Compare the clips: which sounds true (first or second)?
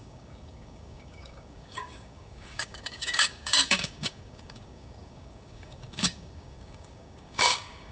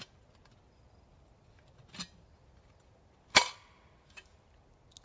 second